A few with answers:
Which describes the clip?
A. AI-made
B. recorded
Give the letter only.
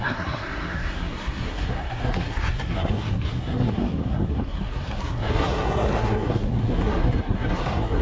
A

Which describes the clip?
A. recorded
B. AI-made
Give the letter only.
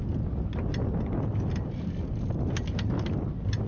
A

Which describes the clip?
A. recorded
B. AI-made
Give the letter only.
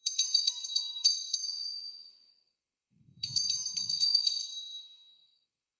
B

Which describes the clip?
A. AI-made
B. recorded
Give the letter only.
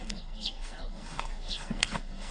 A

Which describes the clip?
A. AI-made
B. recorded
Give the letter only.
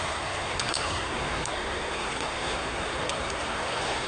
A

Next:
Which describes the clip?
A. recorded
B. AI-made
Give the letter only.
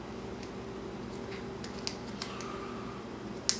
A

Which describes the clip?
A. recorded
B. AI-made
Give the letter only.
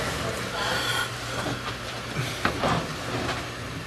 A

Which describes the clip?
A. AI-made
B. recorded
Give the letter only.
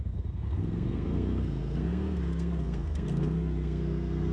A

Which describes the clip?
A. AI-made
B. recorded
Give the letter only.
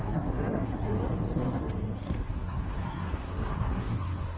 A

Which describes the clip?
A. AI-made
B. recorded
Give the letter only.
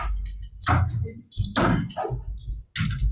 B